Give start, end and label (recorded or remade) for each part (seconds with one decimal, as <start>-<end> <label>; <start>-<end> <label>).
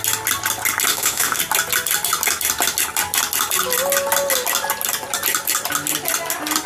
0.0-0.9 recorded; 0.9-1.4 remade; 1.4-6.7 recorded